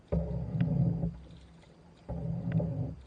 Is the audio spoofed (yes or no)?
no